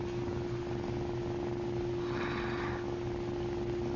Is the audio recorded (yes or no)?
yes